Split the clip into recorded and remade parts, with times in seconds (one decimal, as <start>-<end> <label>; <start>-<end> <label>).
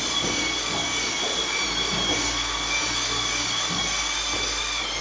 0.0-5.0 recorded